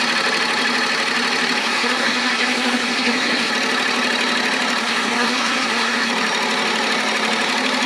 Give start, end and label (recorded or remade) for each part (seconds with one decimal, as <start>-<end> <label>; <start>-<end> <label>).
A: 0.0-1.6 recorded; 1.6-3.5 remade; 3.5-4.8 recorded; 4.8-6.1 remade; 6.1-7.9 recorded